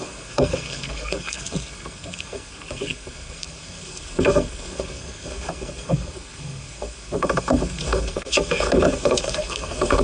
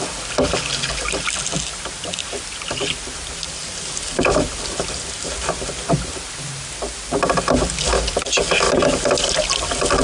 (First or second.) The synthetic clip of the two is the first